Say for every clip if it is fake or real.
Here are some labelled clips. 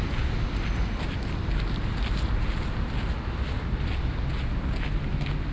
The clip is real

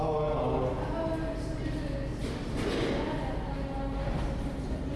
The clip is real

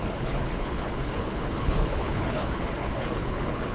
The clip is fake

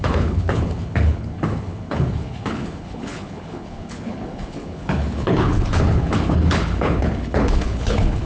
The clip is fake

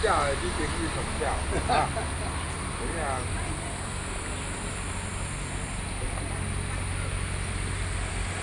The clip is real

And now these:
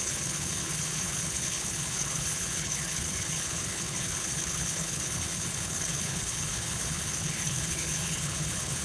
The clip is fake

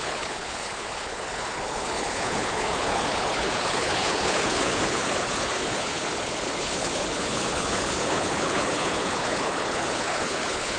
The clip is fake